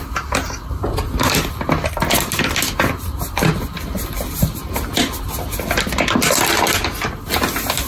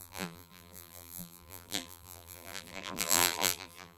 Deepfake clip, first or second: second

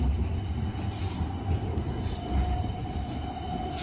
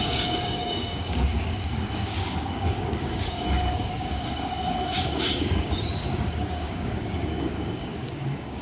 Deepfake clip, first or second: second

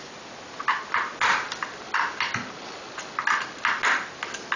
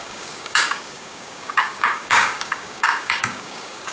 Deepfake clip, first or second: second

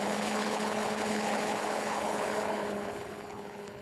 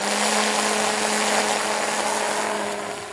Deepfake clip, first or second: first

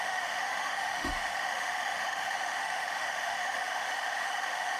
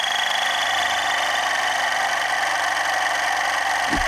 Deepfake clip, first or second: first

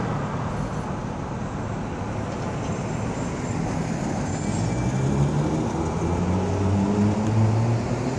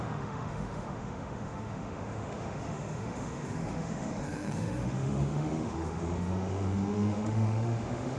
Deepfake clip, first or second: second